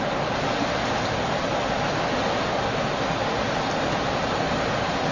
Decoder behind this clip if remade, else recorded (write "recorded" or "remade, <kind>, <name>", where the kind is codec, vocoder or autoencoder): recorded